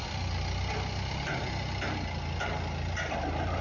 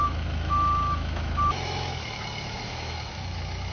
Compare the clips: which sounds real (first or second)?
first